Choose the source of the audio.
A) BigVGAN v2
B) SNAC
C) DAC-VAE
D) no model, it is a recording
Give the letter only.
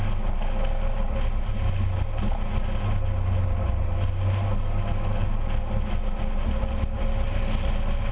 D